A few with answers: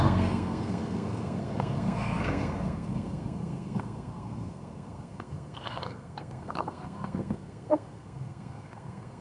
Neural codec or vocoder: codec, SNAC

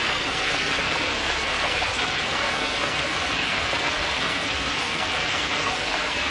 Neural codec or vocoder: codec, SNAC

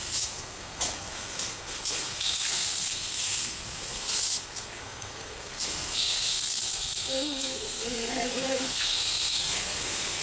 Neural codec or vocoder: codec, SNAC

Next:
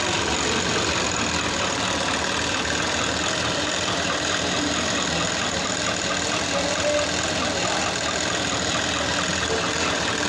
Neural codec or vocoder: none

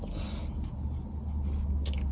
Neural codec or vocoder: none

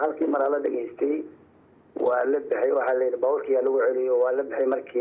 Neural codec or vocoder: none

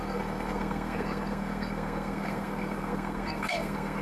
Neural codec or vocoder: codec, SNAC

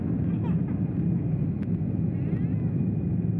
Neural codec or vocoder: none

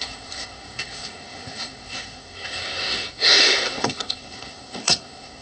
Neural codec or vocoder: codec, SNAC